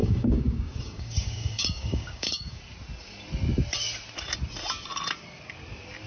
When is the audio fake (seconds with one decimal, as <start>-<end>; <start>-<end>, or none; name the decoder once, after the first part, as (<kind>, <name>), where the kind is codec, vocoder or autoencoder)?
0.0-2.6 (codec, DAC)

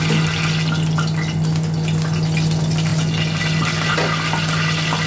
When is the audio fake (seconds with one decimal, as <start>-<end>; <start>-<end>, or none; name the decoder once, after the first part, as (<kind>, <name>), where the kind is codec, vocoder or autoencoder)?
none